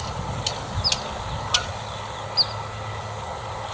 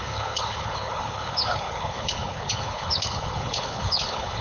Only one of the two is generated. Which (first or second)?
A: second